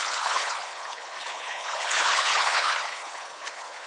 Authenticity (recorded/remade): remade